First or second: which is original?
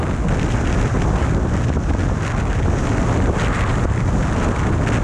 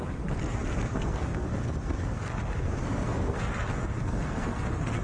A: first